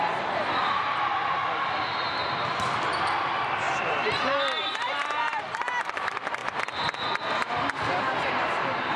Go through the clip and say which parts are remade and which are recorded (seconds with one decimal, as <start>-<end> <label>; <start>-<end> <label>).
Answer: 0.0-1.4 remade; 1.4-3.6 recorded; 3.6-6.4 remade; 6.4-8.2 recorded; 8.2-9.0 remade